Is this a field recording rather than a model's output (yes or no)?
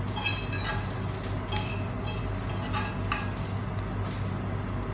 yes